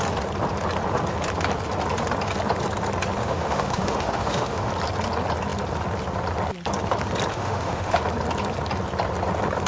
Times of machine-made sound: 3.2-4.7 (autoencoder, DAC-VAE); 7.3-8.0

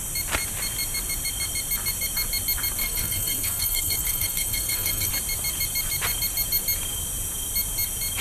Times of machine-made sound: 2.8-5.1 (codec, SNAC)

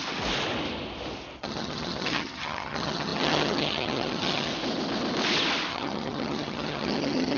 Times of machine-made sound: 1.4-4.5 (vocoder, HiFi-GAN); 5.7-7.4

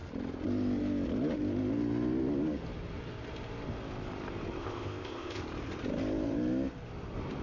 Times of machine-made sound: 4.6-5.4 (codec, ZipCodec)